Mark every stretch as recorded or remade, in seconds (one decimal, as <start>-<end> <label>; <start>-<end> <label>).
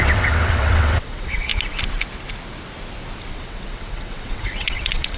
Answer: 0.0-1.5 remade; 1.5-3.3 recorded; 3.3-5.2 remade